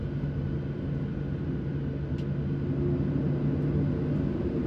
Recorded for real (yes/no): yes